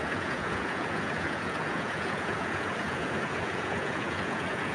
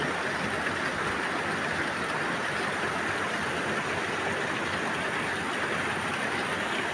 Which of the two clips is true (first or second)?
second